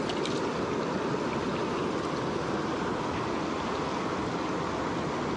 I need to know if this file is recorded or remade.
recorded